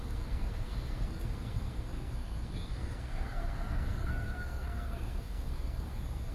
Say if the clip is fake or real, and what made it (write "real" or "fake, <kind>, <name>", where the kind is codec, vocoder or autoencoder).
fake, codec, SNAC